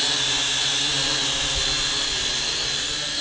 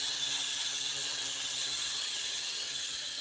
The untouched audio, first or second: first